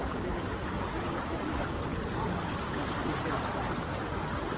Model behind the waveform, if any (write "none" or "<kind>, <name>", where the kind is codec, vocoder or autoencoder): none